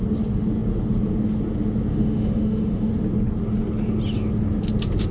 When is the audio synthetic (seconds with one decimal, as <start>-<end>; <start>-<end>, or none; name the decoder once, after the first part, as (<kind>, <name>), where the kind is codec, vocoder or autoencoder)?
1.9-2.9 (autoencoder, DAC-VAE)